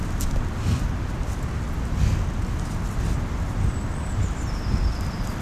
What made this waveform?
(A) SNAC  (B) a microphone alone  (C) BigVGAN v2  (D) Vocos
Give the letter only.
B